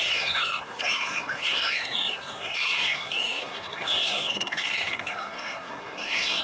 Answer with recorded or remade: remade